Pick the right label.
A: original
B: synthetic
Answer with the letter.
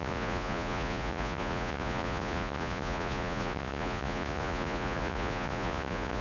B